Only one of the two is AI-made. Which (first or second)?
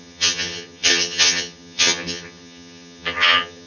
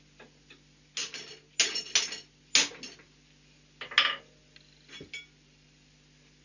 first